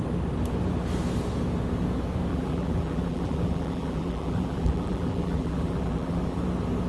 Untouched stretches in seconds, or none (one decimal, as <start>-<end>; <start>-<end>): 0.0-2.3; 6.4-6.9